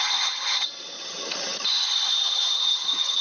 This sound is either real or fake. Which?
fake